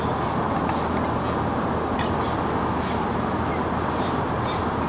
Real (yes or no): yes